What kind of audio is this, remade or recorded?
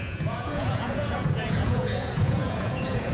remade